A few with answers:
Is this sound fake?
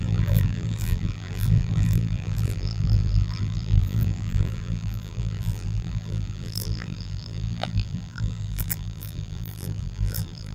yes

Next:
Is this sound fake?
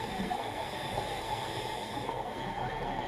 yes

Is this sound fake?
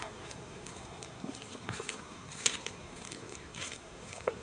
yes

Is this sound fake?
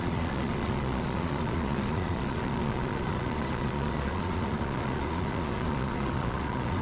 yes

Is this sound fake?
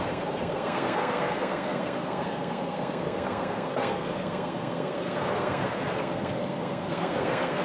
yes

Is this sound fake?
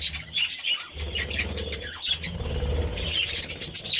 no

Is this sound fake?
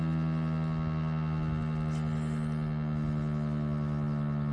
no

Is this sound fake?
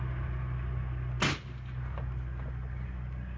no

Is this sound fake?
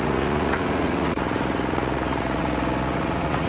yes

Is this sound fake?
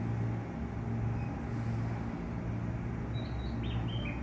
no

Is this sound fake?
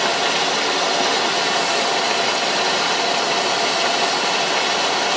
yes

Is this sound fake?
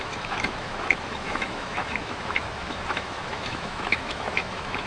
yes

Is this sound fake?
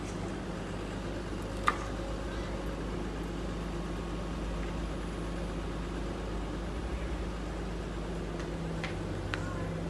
no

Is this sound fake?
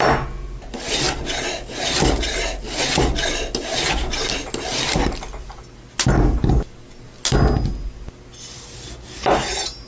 no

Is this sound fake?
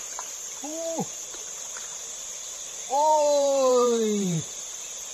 yes